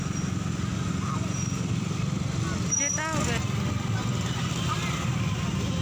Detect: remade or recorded recorded